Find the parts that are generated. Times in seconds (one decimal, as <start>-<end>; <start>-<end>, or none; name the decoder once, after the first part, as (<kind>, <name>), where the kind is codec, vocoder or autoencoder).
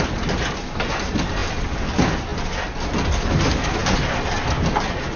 none